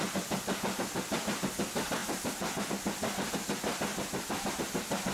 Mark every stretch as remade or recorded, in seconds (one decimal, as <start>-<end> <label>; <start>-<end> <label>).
0.0-2.0 recorded; 2.0-2.7 remade; 2.7-3.9 recorded; 3.9-4.5 remade; 4.5-5.1 recorded